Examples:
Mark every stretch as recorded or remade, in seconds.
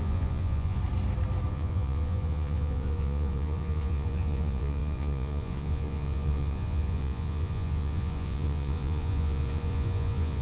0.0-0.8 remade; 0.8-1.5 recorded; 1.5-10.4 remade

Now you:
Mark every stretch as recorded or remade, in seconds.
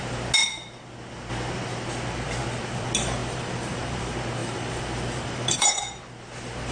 0.0-3.2 recorded; 3.2-4.0 remade; 4.0-4.4 recorded; 4.4-6.0 remade; 6.0-6.7 recorded